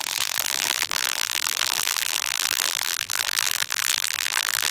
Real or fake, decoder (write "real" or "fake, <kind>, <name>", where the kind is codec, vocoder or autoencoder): fake, vocoder, BigVGAN v2